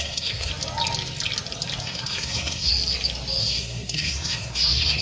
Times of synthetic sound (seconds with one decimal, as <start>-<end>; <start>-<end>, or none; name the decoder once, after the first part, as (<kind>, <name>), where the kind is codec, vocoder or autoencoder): 0.0-0.5 (codec, SNAC); 1.8-2.7; 3.4-5.0